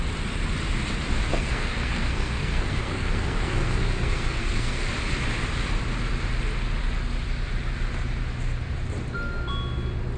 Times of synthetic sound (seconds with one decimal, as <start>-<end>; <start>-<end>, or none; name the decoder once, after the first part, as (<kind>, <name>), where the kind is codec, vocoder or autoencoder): 1.3-4.9 (codec, SNAC)